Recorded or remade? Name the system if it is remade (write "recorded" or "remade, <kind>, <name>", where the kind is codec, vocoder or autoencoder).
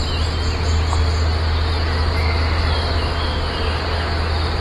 recorded